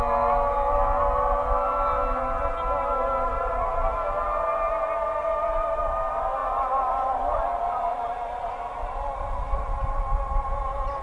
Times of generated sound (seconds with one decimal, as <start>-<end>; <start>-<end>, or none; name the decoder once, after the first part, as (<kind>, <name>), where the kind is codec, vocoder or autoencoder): 6.4-8.5 (vocoder, BigVGAN v2)